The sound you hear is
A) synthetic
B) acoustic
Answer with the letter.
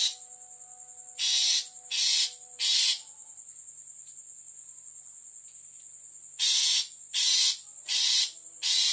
B